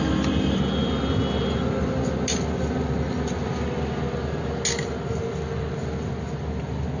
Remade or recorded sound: recorded